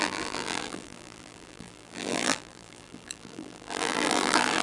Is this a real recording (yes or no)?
no